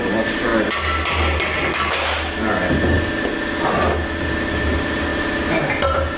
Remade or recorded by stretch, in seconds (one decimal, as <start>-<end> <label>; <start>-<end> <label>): 0.0-0.5 remade; 0.5-4.2 recorded; 4.2-6.2 remade